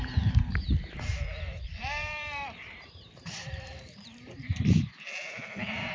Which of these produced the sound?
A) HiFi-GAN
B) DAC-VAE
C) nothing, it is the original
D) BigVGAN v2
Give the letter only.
D